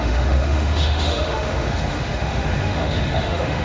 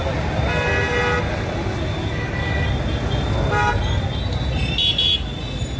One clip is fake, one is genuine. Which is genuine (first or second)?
second